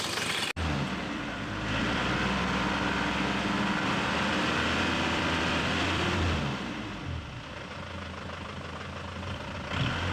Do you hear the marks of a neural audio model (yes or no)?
no